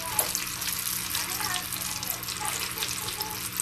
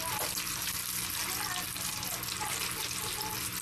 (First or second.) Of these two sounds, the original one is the first